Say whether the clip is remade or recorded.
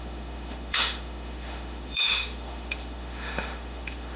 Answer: remade